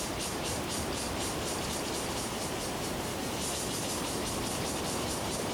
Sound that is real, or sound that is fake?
fake